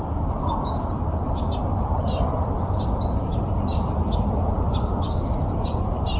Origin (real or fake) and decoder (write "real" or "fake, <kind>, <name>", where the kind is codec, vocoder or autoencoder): real